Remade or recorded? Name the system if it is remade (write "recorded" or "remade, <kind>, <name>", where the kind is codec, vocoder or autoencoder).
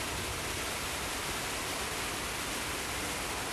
recorded